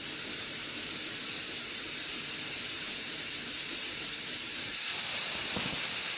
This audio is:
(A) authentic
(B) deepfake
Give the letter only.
B